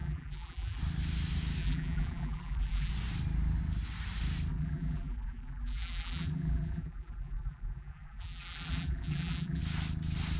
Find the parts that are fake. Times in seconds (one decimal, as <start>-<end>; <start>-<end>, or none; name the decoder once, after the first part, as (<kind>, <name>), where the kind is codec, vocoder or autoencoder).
0.0-0.8 (vocoder, BigVGAN v2); 1.6-2.9; 4.5-9.6